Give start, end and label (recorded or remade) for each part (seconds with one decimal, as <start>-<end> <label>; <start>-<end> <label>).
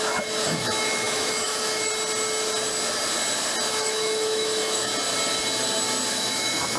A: 0.0-1.9 remade; 1.9-3.7 recorded; 3.7-4.9 remade; 4.9-6.1 recorded; 6.1-6.8 remade